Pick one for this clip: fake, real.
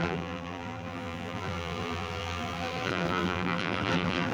fake